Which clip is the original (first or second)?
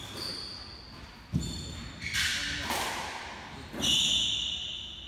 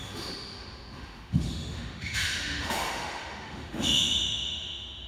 first